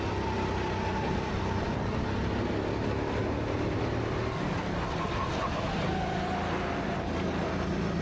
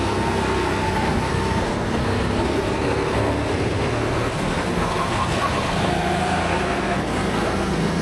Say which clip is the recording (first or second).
first